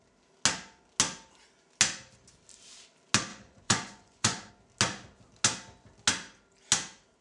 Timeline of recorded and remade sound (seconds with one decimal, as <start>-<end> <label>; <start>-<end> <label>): 0.0-3.3 recorded; 3.3-4.5 remade; 4.5-7.2 recorded